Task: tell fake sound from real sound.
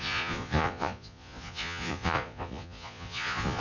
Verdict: fake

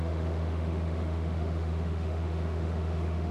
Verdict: fake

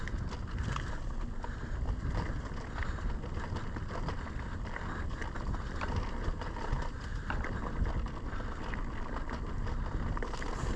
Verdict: real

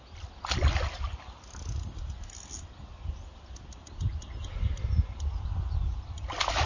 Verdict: real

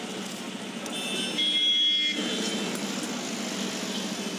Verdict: real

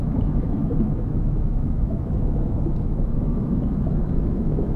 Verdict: fake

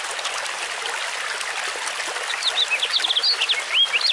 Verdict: real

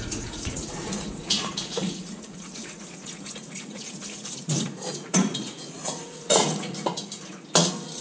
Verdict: fake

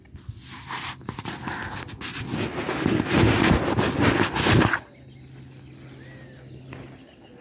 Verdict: real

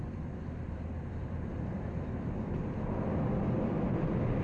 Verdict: fake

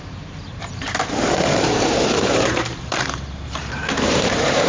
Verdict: fake